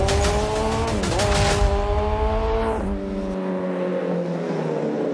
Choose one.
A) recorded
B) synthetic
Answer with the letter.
A